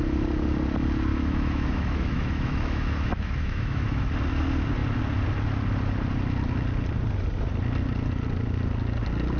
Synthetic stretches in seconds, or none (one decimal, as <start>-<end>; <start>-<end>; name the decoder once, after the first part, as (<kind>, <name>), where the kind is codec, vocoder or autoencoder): 1.1-4.1 (autoencoder, DAC-VAE)